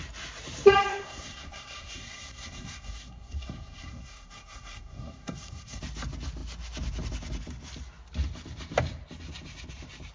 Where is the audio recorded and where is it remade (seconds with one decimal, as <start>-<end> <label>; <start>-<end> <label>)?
0.0-0.9 recorded; 0.9-5.8 remade; 5.8-10.1 recorded